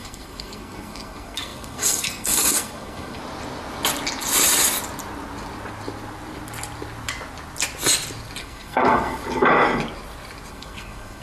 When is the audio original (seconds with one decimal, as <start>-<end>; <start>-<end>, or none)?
3.2-8.4; 9.2-10.5